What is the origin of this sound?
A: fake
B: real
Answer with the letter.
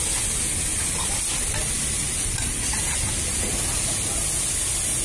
B